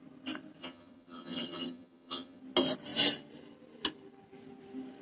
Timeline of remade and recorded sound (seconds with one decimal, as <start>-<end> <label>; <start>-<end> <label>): 0.0-0.6 recorded; 0.6-2.4 remade; 2.4-5.0 recorded